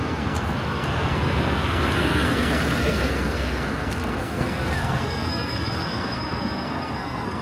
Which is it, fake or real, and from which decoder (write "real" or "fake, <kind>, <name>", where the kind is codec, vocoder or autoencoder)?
fake, codec, SNAC